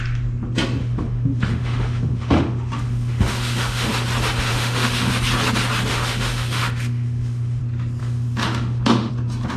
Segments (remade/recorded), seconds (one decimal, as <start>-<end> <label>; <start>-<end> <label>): 0.0-0.8 recorded; 0.8-3.9 remade; 3.9-4.5 recorded; 4.5-5.1 remade; 5.1-5.9 recorded; 5.9-7.6 remade; 7.6-8.0 recorded; 8.0-9.1 remade; 9.1-9.6 recorded

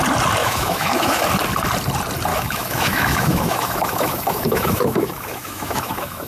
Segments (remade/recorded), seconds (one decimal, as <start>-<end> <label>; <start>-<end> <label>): 0.0-0.4 recorded; 0.4-1.2 remade; 1.2-2.3 recorded; 2.3-6.3 remade

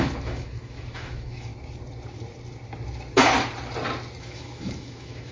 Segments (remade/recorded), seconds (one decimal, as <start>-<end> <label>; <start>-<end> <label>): 0.0-1.5 remade; 1.5-4.2 recorded; 4.2-5.3 remade

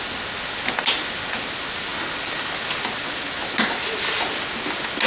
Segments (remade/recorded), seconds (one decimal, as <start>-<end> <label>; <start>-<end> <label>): 0.0-5.1 recorded

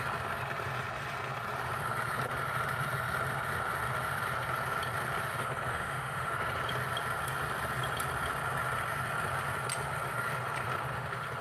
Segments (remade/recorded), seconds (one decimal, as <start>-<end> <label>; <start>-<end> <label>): 0.0-5.7 recorded; 5.7-6.3 remade; 6.3-11.4 recorded

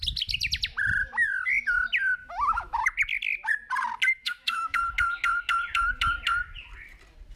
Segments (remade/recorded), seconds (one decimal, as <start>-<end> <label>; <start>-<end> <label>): 0.0-2.2 recorded; 2.2-2.8 remade; 2.8-4.2 recorded; 4.2-4.8 remade; 4.8-7.4 recorded